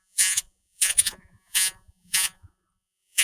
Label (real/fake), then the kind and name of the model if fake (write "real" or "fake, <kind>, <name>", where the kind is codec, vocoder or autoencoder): fake, vocoder, Vocos